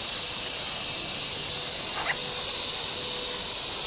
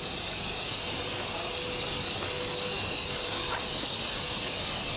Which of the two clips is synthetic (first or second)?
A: second